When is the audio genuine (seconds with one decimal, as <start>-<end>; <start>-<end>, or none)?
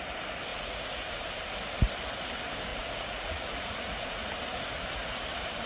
0.0-0.5; 1.2-2.7; 4.3-5.7